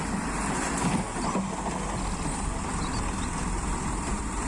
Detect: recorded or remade recorded